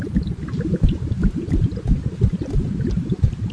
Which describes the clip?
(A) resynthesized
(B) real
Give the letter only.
B